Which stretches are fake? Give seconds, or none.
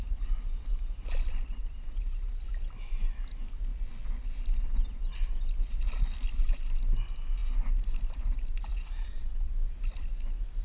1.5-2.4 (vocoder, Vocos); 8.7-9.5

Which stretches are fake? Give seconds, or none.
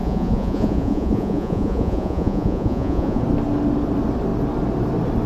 0.0-3.2 (vocoder, Vocos)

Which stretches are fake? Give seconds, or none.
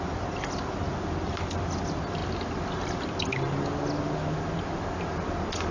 none